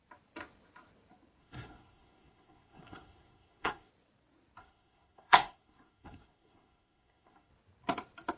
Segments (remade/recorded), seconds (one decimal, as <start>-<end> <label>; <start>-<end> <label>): 0.0-1.4 recorded; 1.4-3.9 remade; 3.9-4.6 recorded; 4.6-7.5 remade; 7.5-8.4 recorded